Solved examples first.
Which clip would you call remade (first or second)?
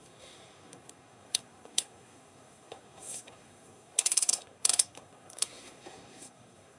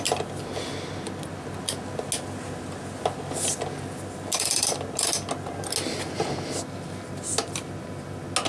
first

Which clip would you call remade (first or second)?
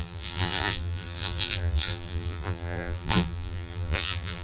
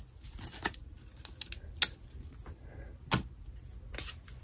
first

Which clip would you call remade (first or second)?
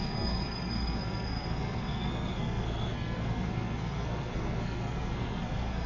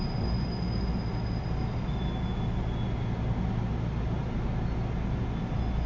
first